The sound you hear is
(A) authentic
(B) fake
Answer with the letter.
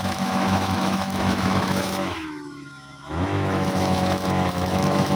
B